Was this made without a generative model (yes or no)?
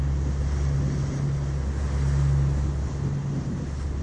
yes